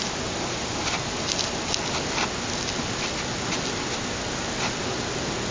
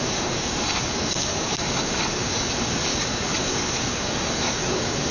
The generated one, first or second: second